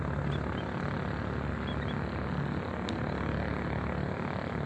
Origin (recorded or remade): recorded